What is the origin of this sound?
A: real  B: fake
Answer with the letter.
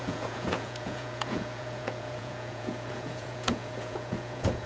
B